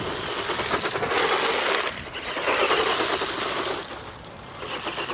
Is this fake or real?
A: real